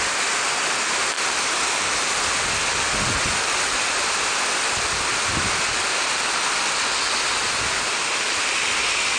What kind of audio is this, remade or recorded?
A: recorded